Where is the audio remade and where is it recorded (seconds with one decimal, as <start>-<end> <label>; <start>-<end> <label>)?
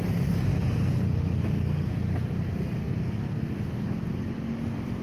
0.0-0.5 recorded; 0.5-2.3 remade; 2.3-2.8 recorded; 2.8-3.5 remade; 3.5-5.0 recorded